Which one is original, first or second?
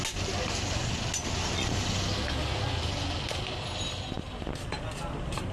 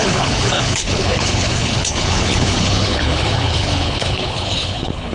first